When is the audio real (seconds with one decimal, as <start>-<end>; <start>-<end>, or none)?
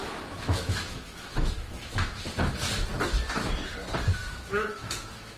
2.2-4.2